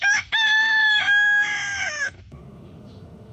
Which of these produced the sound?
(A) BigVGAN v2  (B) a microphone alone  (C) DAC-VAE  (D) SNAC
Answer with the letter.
C